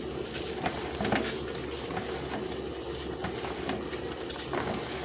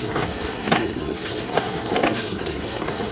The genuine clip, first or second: first